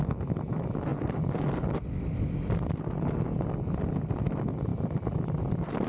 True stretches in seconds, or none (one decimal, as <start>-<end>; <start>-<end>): 0.0-5.9